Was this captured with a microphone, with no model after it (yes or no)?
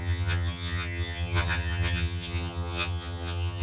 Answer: no